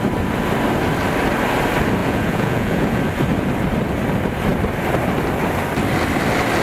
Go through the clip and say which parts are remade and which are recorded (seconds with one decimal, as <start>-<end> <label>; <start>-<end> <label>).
0.0-2.0 recorded; 2.0-3.0 remade; 3.0-6.6 recorded